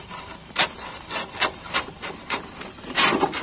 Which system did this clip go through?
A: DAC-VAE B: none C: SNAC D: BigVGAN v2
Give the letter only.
D